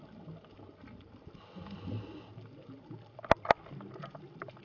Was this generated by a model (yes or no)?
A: no